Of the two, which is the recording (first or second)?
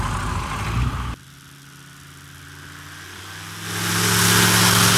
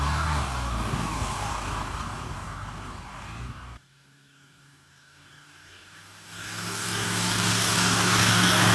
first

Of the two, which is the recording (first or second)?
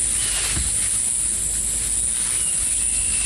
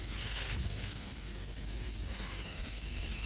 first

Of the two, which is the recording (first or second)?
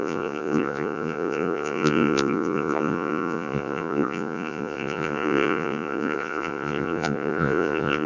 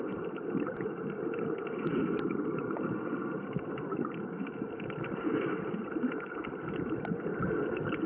second